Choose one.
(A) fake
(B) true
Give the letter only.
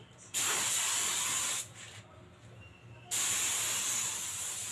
B